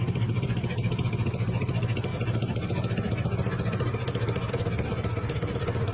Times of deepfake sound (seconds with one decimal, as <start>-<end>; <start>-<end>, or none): none